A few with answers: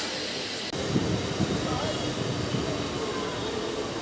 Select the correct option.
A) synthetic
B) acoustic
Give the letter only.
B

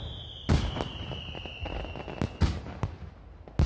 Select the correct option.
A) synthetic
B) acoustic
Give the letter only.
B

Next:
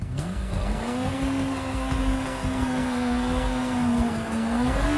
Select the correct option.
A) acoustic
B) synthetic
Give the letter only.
B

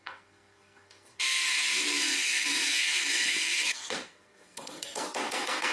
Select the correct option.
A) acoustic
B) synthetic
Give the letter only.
B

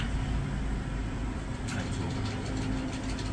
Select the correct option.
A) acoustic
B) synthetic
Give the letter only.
A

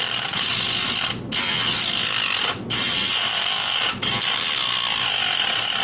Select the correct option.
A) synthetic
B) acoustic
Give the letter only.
B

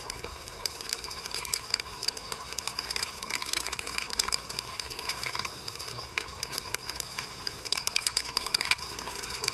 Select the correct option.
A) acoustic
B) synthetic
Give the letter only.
B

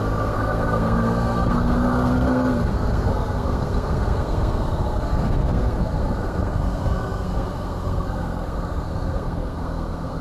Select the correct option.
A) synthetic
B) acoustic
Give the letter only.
A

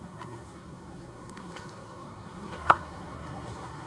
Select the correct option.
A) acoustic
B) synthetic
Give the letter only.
B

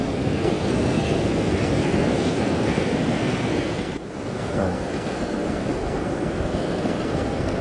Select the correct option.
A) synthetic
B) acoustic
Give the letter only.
A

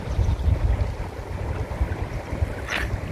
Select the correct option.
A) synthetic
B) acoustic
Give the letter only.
B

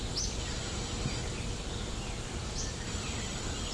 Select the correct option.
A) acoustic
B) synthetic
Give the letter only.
A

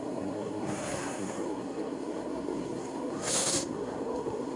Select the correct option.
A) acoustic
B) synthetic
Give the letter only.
B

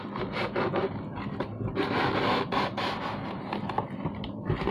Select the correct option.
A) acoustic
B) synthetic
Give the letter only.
A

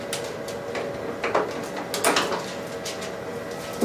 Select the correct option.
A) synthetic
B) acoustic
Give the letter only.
B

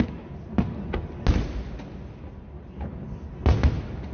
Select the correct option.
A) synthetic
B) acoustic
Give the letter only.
B